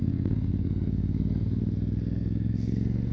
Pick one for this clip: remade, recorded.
remade